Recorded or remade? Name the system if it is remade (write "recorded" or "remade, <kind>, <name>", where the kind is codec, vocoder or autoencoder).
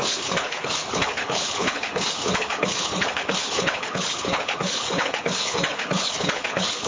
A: remade, codec, HILCodec